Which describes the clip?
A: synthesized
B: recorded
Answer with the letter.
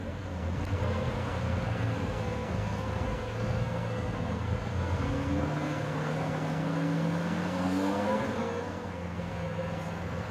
A